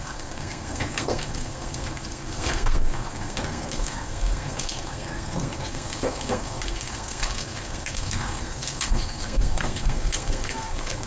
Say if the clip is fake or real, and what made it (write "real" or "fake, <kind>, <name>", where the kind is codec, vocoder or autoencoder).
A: fake, codec, SNAC